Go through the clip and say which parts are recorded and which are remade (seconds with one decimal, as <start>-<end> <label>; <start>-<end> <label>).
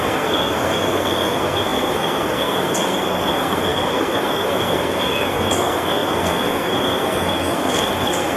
0.0-8.4 remade